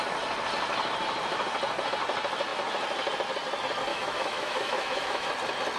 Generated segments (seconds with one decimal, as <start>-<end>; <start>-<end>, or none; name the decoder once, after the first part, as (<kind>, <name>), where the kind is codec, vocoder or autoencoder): 3.9-5.3 (autoencoder, DAC-VAE)